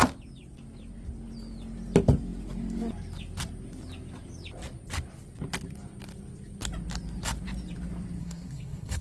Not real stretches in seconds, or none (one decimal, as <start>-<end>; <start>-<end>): 8.2-9.0